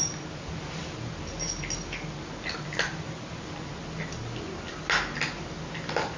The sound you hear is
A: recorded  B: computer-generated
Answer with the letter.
A